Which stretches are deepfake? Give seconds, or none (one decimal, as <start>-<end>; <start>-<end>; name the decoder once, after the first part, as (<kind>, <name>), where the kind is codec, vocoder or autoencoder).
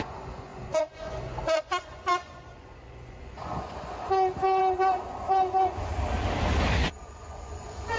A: 0.0-5.9 (vocoder, Vocos); 7.0-8.0